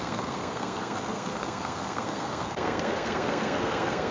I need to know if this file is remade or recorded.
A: remade